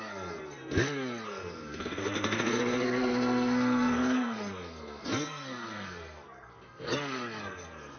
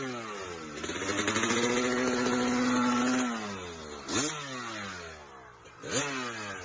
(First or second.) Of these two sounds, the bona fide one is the second